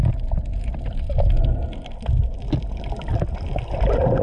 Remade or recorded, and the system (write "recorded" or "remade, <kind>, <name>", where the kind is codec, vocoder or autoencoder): recorded